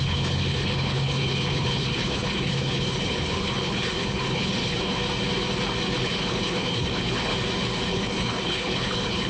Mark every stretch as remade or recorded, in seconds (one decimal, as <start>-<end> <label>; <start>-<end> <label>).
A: 0.0-5.0 remade; 5.0-6.0 recorded; 6.0-7.3 remade; 7.3-7.9 recorded; 7.9-9.3 remade